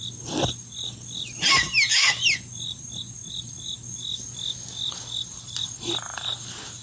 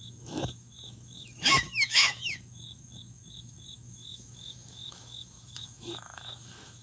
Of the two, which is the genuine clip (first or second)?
first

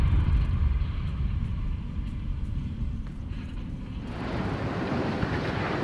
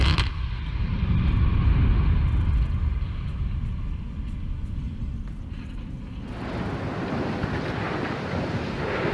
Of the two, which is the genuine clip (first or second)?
second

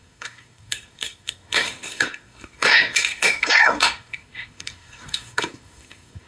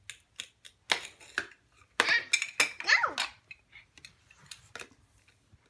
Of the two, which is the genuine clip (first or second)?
second